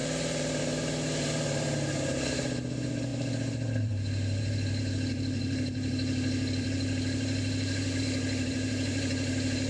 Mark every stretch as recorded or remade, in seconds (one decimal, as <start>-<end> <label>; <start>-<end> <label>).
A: 0.0-9.7 remade